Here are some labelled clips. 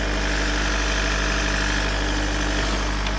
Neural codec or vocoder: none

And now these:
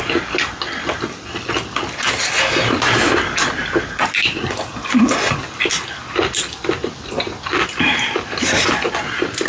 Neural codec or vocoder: none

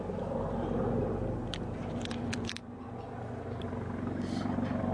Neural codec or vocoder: vocoder, BigVGAN v2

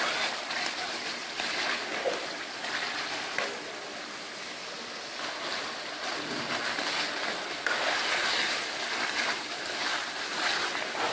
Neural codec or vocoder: none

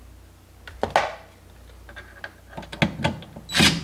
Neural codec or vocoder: none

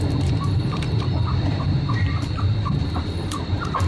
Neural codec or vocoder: vocoder, BigVGAN v2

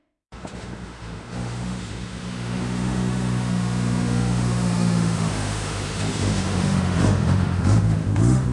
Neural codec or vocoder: autoencoder, DAC-VAE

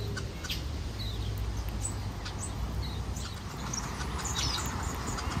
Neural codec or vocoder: none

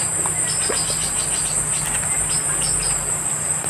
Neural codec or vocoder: none